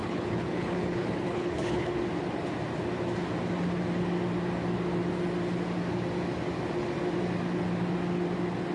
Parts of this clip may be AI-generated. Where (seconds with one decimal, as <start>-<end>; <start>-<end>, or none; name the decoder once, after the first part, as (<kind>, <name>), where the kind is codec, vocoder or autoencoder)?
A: 0.0-2.0 (codec, HILCodec)